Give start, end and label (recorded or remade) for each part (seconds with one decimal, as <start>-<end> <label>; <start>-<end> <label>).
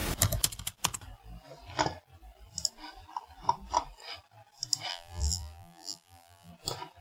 0.0-4.9 recorded; 4.9-6.5 remade; 6.5-7.0 recorded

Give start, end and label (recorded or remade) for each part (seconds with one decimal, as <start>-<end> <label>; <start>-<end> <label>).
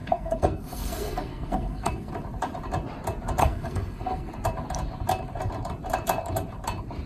0.0-2.1 remade; 2.1-3.4 recorded; 3.4-4.3 remade; 4.3-7.1 recorded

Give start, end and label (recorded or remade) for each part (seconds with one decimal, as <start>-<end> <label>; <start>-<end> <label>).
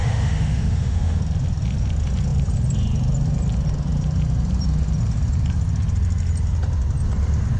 0.0-1.2 remade; 1.2-7.6 recorded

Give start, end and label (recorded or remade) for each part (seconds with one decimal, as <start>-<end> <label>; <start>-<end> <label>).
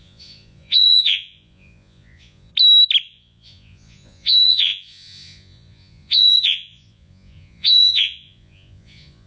0.0-2.5 remade; 2.5-3.1 recorded; 3.1-9.3 remade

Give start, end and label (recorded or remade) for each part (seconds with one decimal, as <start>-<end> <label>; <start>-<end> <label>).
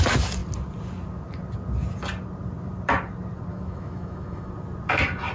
0.0-3.5 recorded; 3.5-4.5 remade; 4.5-5.3 recorded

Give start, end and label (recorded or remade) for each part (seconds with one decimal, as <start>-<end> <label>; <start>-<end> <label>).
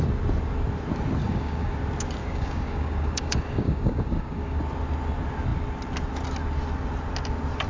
0.0-1.2 recorded; 1.2-1.7 remade; 1.7-2.2 recorded; 2.2-4.6 remade; 4.6-7.7 recorded